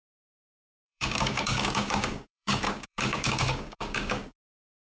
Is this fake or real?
fake